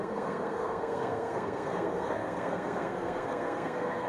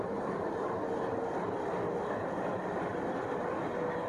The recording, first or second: second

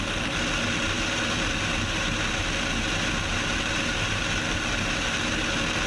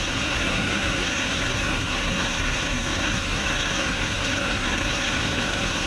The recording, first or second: first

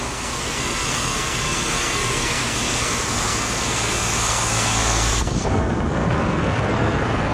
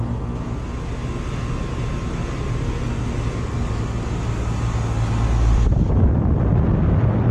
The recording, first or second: second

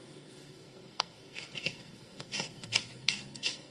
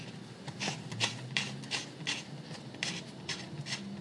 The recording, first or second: second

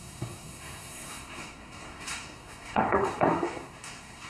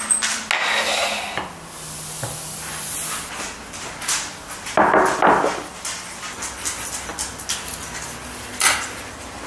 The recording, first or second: second